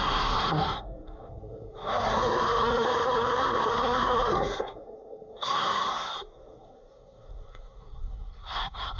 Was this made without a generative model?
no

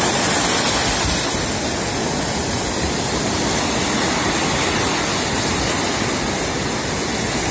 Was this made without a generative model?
yes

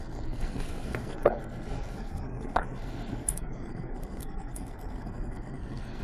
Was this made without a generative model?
no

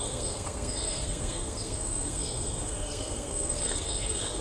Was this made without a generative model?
no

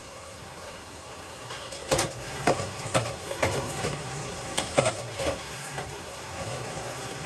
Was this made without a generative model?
no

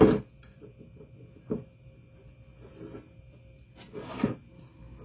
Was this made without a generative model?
yes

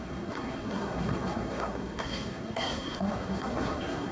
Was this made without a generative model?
no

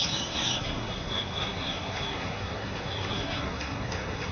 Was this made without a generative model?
no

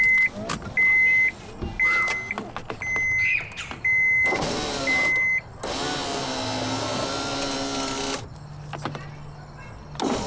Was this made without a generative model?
yes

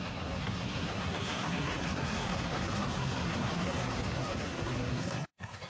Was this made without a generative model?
no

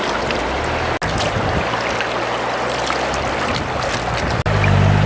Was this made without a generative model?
yes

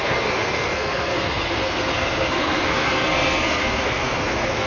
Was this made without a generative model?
no